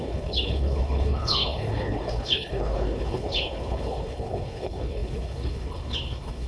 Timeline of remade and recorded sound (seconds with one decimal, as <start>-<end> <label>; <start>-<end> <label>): 0.0-6.5 remade